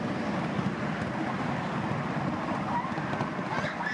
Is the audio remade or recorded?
recorded